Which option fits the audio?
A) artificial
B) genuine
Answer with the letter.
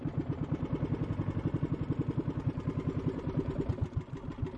B